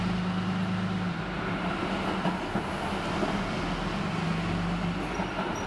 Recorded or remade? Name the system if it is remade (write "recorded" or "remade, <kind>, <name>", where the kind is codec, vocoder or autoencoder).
recorded